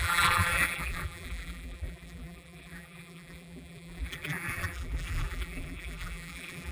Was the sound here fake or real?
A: fake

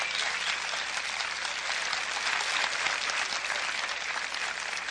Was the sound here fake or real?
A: real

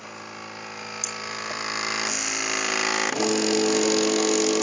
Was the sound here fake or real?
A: real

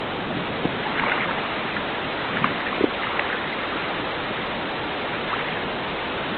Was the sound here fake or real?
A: real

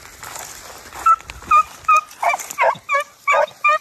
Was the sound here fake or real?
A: real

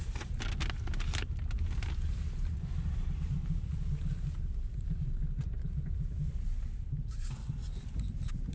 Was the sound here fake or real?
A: real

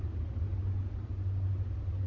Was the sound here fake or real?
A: real